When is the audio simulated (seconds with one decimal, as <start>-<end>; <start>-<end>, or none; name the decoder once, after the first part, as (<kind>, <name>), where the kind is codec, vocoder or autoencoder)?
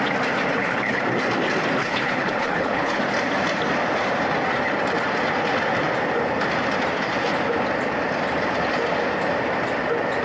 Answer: 0.5-1.0 (codec, HILCodec); 1.8-3.0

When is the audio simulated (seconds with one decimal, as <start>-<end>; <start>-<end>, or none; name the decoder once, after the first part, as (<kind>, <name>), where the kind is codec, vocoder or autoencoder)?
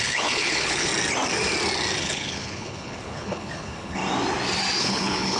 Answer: 0.0-0.9 (codec, HILCodec); 2.0-4.0; 4.8-5.4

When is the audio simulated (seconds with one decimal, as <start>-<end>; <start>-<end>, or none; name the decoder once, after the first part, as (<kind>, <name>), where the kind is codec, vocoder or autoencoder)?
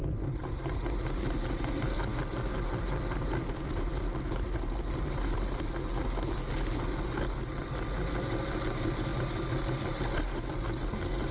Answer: none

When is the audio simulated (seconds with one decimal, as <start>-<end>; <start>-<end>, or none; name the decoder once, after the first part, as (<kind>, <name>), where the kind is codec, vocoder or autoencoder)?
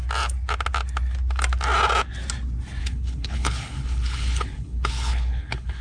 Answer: 2.8-5.8 (codec, HILCodec)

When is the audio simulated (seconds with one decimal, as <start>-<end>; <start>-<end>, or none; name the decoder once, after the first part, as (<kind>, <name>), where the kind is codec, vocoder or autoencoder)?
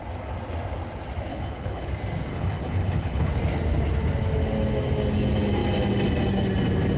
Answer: 1.3-1.9 (codec, HILCodec); 2.3-3.3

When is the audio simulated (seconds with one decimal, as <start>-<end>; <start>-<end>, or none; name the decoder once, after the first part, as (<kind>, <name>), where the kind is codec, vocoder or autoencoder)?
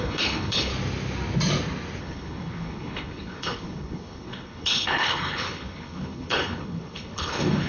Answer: 0.0-0.7 (codec, HILCodec); 2.0-7.7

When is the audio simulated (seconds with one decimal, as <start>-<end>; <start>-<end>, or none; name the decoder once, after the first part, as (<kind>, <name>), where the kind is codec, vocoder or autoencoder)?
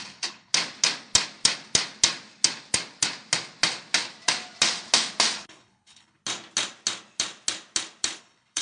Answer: 0.0-0.5 (codec, HILCodec); 5.4-6.2; 8.2-8.6